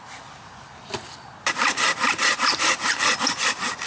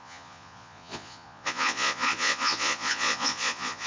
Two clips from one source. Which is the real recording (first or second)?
first